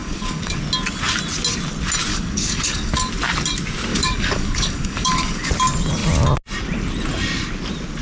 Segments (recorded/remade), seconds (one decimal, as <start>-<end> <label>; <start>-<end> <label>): 0.0-0.6 remade; 0.6-2.1 recorded; 2.1-3.1 remade; 3.1-3.9 recorded; 3.9-5.5 remade; 5.5-8.0 recorded